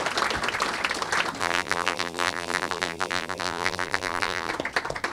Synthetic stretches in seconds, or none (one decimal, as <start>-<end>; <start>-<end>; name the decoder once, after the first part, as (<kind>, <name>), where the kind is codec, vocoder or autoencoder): 1.4-4.5 (vocoder, BigVGAN v2)